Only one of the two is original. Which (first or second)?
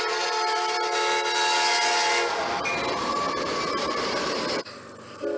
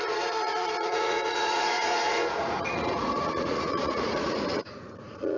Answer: first